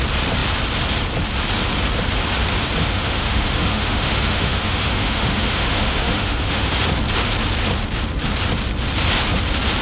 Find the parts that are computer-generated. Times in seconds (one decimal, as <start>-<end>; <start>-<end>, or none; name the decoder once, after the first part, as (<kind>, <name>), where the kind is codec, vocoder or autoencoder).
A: 2.8-6.8 (autoencoder, DAC-VAE)